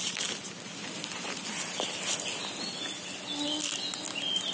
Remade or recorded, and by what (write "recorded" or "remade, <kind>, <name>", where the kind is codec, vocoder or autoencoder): recorded